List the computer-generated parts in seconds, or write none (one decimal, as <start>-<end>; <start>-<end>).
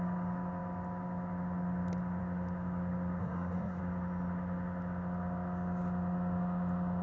3.2-3.8